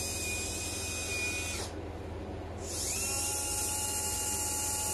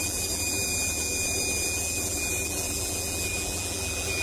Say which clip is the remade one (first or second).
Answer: second